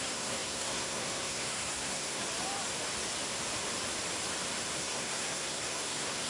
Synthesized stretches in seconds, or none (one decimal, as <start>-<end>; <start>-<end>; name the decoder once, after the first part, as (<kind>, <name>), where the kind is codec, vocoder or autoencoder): 0.0-2.2 (codec, SNAC); 4.8-6.3